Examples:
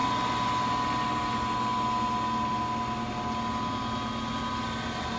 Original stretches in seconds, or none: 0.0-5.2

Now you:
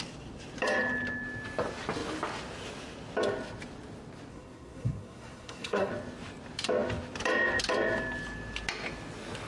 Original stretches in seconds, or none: 0.0-4.3; 5.9-9.5

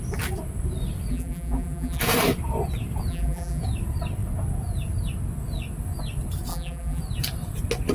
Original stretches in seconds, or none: 0.0-1.1; 2.0-3.1; 3.6-6.5; 7.0-7.9